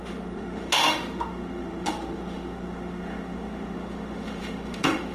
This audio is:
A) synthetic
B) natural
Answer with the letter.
A